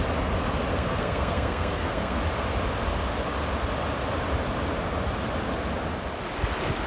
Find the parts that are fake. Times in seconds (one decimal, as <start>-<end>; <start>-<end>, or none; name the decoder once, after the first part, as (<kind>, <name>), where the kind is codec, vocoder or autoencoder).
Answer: 0.7-2.2 (codec, SNAC)